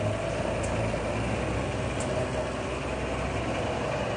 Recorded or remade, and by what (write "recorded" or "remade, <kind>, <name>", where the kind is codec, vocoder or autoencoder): recorded